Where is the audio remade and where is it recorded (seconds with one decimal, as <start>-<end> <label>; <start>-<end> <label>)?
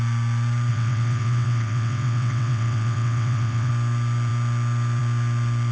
0.0-0.7 recorded; 0.7-3.7 remade; 3.7-5.7 recorded